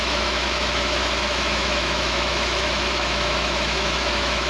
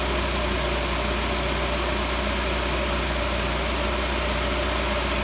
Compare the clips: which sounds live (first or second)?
second